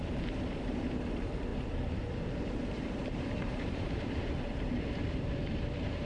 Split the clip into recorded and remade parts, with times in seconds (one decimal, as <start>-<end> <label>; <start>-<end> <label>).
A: 0.0-6.1 remade